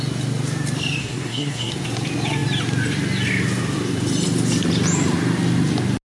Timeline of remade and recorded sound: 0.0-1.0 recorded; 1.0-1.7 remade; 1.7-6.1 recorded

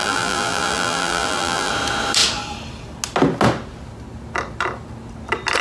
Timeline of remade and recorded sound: 0.0-1.7 remade; 1.7-5.6 recorded